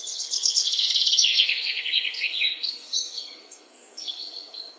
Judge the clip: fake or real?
fake